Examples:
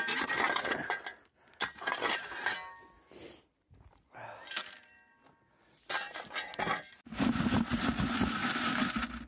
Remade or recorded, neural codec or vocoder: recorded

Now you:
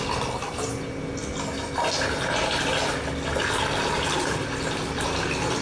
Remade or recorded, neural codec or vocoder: recorded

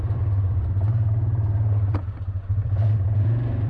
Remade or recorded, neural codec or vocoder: remade, vocoder, BigVGAN v2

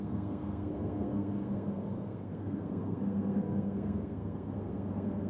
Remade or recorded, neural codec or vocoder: remade, codec, SNAC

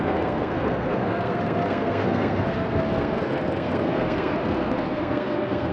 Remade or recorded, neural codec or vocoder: remade, codec, SNAC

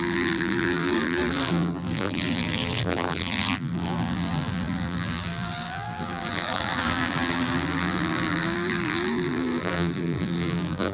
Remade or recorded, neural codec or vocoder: remade, vocoder, BigVGAN v2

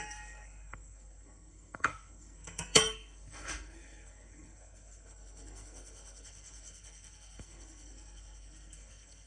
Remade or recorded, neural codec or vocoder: remade, codec, SNAC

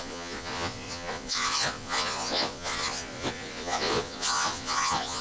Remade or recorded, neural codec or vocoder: remade, vocoder, Vocos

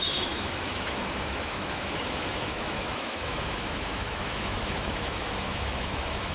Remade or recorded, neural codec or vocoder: remade, autoencoder, DAC-VAE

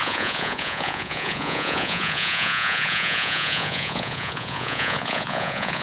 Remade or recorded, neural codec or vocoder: remade, vocoder, Vocos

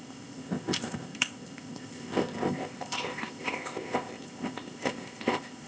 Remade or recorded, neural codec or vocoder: remade, codec, ZipCodec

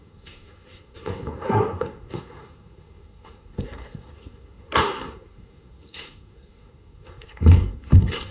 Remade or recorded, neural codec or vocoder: remade, codec, SNAC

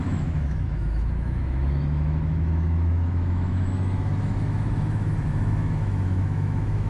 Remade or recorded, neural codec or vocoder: remade, autoencoder, DAC-VAE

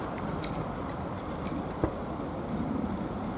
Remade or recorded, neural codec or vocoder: remade, vocoder, BigVGAN v2